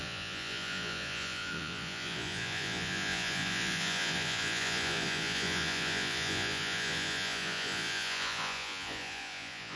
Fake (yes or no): yes